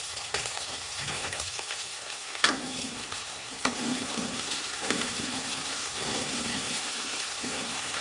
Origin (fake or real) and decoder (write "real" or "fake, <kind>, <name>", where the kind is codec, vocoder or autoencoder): fake, codec, SNAC